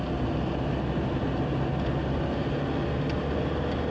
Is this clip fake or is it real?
real